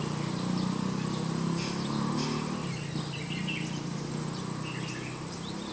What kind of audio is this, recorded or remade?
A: recorded